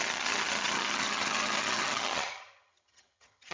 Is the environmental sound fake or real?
fake